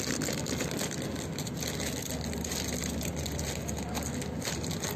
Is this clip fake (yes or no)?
no